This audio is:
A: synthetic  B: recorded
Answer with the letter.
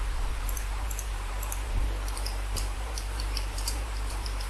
A